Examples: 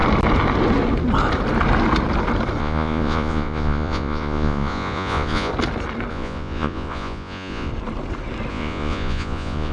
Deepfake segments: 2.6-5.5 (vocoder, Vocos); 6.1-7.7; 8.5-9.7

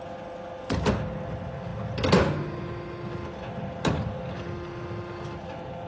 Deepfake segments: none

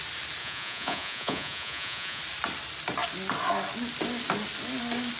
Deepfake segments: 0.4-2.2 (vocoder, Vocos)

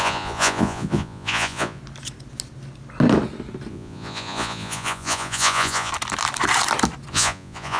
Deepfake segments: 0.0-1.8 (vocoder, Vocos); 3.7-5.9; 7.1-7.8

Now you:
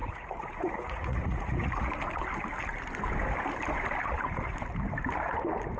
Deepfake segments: 0.0-1.9 (vocoder, Vocos)

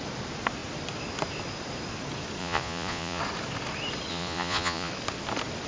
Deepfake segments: 2.4-3.2 (vocoder, Vocos); 4.1-4.9

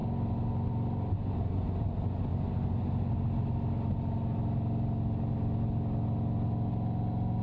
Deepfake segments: none

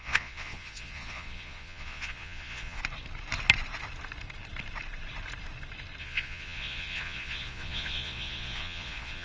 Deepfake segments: 0.0-2.8 (vocoder, Vocos); 6.0-9.2